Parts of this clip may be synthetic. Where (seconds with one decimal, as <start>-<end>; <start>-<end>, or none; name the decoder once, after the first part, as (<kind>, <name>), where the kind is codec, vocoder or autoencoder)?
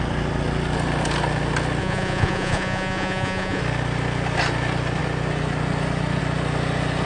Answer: 1.8-3.6 (vocoder, Vocos)